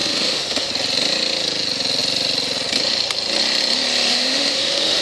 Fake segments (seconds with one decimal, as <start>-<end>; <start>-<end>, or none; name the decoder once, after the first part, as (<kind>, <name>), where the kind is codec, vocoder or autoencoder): 0.0-0.7 (autoencoder, DAC-VAE); 4.1-5.0